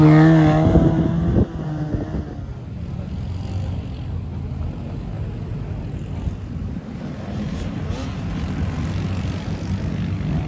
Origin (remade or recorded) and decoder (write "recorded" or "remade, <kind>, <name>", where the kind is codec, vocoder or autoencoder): recorded